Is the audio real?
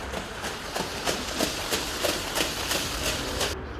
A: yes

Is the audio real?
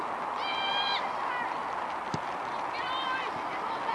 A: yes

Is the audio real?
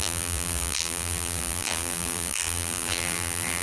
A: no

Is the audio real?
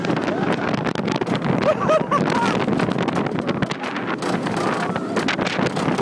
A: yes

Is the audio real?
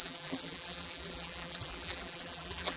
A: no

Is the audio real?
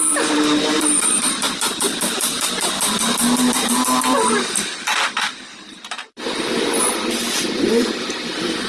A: no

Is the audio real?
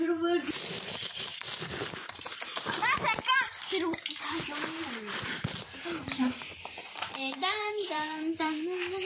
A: no